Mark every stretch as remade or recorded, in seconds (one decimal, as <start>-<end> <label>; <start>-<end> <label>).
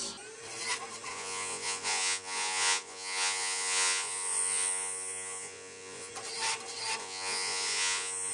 0.0-1.1 recorded; 1.1-6.1 remade; 6.1-7.0 recorded; 7.0-8.3 remade